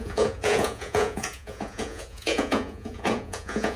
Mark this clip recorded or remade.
remade